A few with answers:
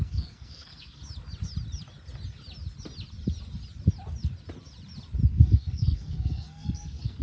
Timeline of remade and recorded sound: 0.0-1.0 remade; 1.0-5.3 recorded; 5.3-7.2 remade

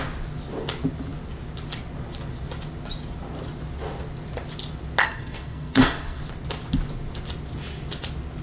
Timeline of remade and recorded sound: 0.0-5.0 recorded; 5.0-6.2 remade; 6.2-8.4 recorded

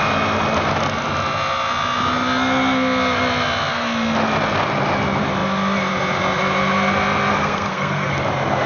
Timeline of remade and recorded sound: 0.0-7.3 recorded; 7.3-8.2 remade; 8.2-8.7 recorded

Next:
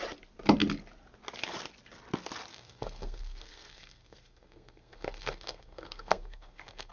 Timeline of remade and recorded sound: 0.0-2.5 recorded; 2.5-6.9 remade